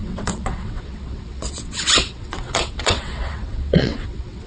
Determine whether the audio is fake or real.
fake